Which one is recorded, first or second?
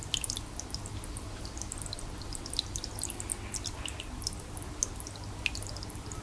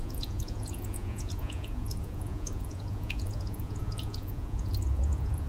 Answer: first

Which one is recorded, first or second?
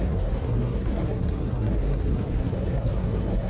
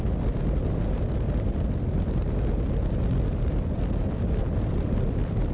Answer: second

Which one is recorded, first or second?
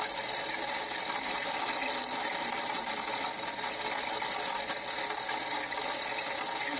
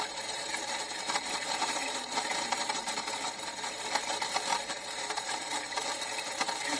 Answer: first